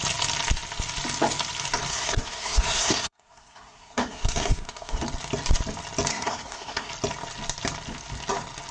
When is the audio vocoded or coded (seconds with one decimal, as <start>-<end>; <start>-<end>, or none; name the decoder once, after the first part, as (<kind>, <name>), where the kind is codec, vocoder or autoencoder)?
1.9-5.0 (codec, SNAC); 6.1-6.9